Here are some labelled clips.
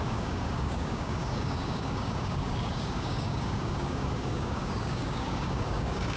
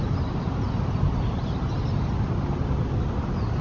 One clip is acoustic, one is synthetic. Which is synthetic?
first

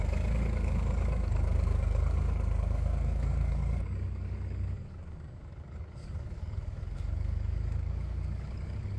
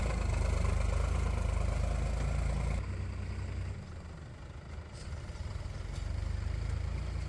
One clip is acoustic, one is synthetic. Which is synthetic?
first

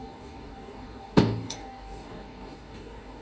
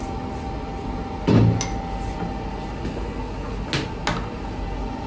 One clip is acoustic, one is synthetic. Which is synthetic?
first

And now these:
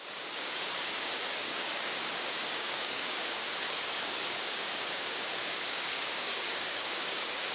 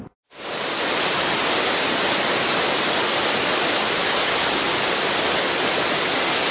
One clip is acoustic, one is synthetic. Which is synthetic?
first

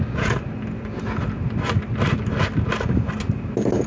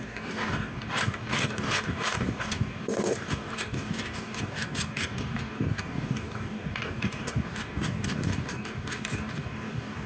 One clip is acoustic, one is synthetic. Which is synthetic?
second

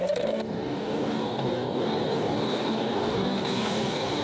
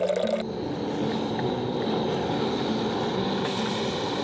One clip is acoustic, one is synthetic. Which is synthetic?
first